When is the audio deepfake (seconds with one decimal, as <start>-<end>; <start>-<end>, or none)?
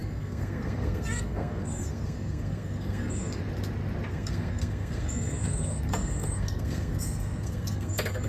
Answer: 0.0-3.4; 4.1-8.3